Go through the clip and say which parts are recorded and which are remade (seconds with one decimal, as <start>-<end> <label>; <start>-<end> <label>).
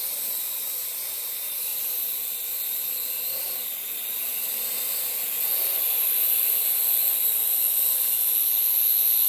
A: 0.0-9.3 recorded